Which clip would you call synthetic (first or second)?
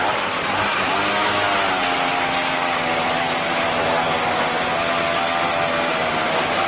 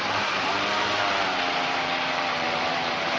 second